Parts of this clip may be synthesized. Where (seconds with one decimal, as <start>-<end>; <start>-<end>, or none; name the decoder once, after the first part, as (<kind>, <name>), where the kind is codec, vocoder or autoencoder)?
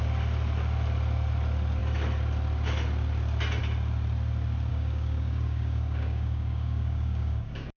4.7-7.8 (codec, DAC)